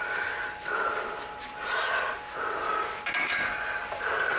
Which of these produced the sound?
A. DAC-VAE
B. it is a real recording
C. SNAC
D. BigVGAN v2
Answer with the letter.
B